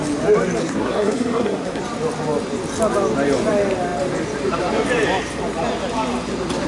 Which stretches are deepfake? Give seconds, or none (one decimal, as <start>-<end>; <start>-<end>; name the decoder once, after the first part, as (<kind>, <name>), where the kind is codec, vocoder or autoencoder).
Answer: 0.6-1.8 (codec, SNAC)